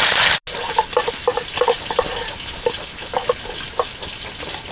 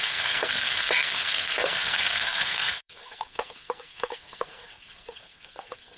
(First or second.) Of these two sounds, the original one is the first